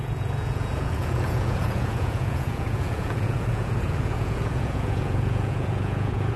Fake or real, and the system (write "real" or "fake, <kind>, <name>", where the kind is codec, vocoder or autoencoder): fake, vocoder, Vocos